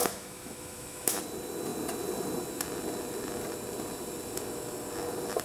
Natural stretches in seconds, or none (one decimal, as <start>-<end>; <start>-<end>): 1.2-5.4